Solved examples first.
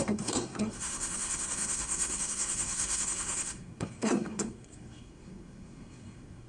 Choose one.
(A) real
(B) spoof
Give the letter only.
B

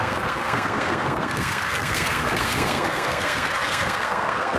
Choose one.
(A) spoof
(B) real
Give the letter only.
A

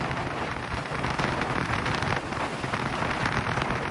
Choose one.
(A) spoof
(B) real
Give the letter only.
B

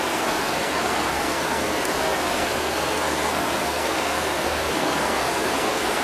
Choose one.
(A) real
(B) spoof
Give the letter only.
B